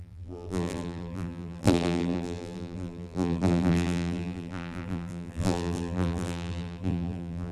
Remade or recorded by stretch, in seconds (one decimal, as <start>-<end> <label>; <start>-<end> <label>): 0.0-7.5 remade